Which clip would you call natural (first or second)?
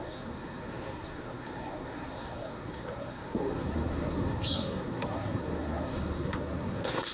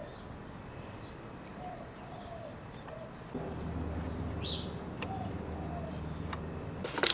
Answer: second